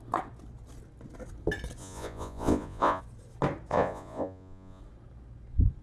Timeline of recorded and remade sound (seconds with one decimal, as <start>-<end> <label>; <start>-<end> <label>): 0.0-1.8 recorded; 1.8-3.0 remade; 3.0-3.7 recorded; 3.7-4.8 remade; 4.8-5.8 recorded